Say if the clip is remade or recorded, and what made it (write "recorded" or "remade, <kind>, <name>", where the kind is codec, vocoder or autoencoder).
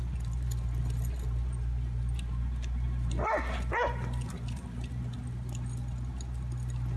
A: recorded